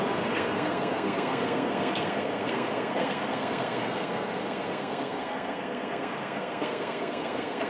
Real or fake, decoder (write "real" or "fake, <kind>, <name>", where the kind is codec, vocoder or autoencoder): fake, codec, SNAC